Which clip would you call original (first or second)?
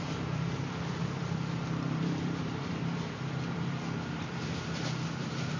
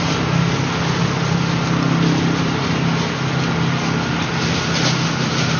second